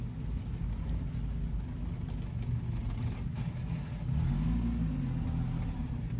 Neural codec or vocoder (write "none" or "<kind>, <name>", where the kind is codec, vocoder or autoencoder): none